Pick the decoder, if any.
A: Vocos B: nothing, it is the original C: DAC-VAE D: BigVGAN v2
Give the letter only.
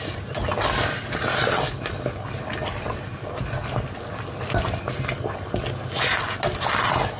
B